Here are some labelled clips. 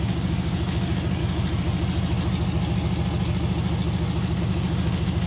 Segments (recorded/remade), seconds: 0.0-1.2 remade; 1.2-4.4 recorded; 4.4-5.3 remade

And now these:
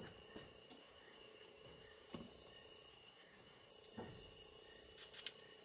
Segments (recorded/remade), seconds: 0.0-0.8 recorded; 0.8-2.1 remade; 2.1-2.9 recorded; 2.9-3.7 remade; 3.7-5.6 recorded

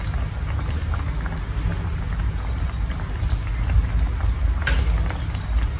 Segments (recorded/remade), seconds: 0.0-5.8 recorded

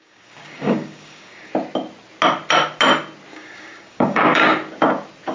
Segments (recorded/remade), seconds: 0.0-1.5 remade; 1.5-3.3 recorded; 3.3-4.5 remade; 4.5-5.3 recorded